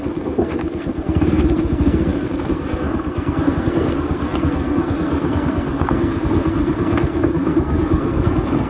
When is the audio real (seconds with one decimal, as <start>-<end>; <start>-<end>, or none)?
none

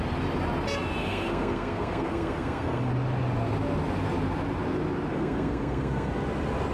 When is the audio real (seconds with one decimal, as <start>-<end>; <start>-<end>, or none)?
0.0-1.0; 2.9-5.1; 6.1-6.7

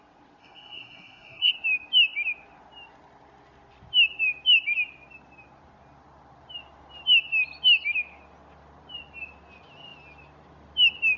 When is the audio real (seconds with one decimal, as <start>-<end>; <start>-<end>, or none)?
0.0-0.4; 1.5-11.2

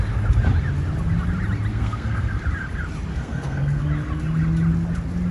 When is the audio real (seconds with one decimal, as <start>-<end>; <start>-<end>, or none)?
0.0-1.7; 2.3-3.1; 3.8-5.3

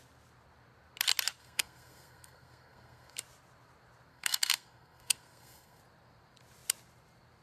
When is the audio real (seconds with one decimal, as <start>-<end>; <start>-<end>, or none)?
0.0-1.4; 3.2-4.1; 5.8-7.4

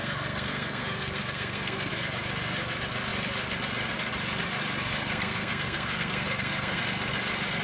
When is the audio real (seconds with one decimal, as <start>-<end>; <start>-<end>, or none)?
1.9-5.0; 6.8-7.6